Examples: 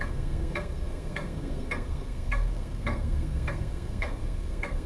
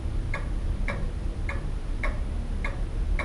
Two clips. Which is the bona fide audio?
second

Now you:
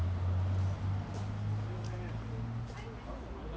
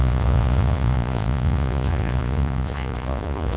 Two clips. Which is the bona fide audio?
first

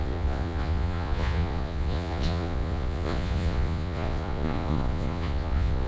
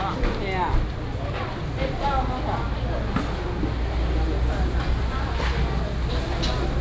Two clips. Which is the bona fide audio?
second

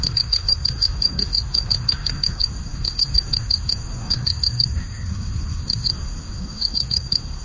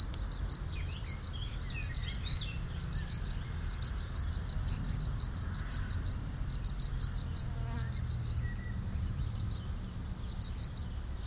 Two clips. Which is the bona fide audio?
second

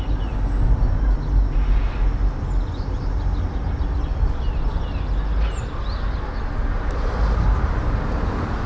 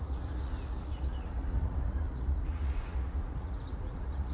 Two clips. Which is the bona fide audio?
first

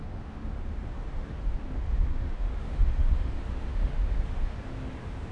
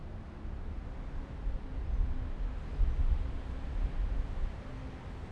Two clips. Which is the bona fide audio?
second